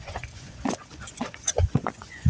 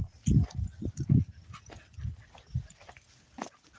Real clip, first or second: second